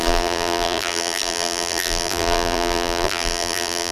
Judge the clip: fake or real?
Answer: fake